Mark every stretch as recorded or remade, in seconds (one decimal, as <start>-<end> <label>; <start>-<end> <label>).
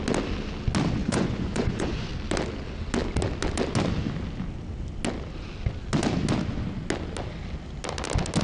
0.0-1.0 recorded; 1.0-2.1 remade; 2.1-8.4 recorded